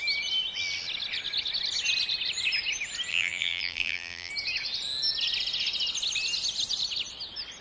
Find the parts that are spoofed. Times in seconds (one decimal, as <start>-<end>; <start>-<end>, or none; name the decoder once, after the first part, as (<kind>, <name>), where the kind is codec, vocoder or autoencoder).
3.1-4.3 (vocoder, BigVGAN v2)